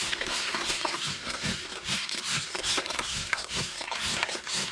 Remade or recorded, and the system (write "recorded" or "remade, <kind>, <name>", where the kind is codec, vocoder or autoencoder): remade, codec, SNAC